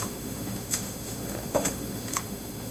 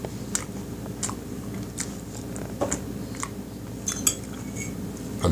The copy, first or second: first